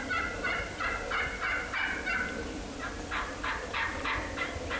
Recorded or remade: recorded